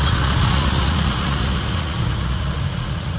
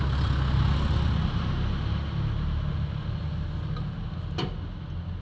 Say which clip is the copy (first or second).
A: first